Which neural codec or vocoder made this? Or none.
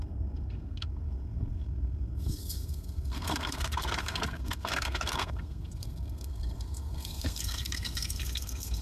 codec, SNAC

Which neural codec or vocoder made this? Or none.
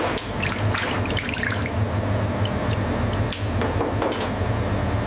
none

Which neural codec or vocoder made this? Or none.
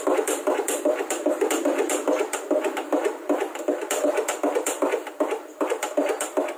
vocoder, BigVGAN v2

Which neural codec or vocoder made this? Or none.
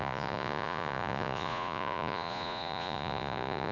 vocoder, Vocos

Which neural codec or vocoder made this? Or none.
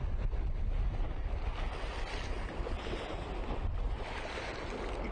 none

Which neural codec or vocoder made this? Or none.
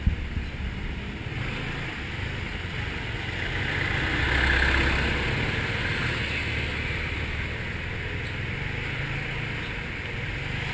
none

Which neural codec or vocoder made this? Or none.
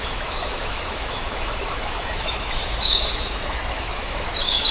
autoencoder, DAC-VAE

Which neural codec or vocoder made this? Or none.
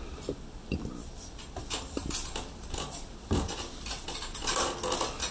none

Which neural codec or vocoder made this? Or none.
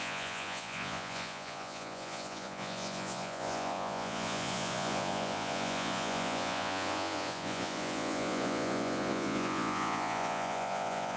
vocoder, Vocos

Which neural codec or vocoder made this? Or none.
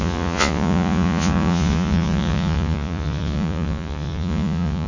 vocoder, Vocos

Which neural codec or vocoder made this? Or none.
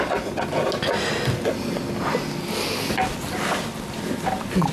none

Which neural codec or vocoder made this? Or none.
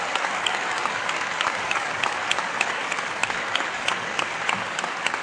codec, DAC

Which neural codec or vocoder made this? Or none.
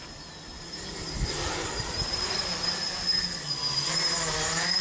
none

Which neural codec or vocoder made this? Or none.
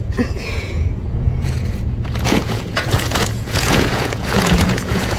vocoder, Vocos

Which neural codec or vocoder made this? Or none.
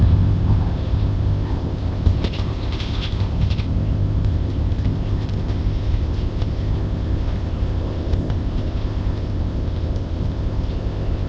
codec, ZipCodec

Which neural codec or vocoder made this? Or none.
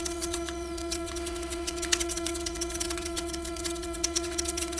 vocoder, WaveNeXt